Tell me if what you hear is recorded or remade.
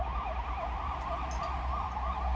recorded